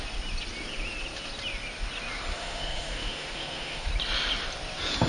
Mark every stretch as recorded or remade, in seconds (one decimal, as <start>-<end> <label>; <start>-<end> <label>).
0.0-2.3 recorded; 2.3-3.9 remade; 3.9-5.1 recorded